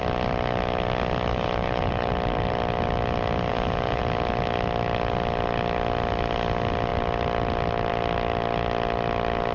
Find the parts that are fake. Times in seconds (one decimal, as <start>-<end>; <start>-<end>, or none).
1.3-2.1; 3.5-4.0